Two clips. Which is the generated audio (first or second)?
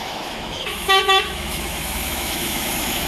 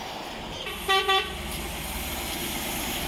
first